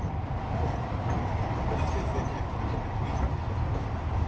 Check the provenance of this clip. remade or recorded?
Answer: recorded